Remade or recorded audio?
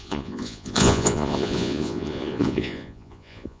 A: remade